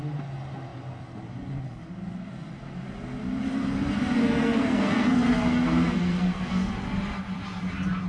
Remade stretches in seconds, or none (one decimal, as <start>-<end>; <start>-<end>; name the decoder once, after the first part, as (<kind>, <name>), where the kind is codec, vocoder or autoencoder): 4.2-6.7 (codec, SNAC)